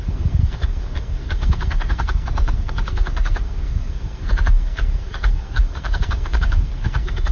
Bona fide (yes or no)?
no